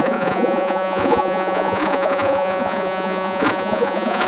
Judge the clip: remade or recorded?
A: remade